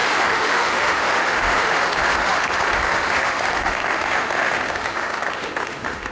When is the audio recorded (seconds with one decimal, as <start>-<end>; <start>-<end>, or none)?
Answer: none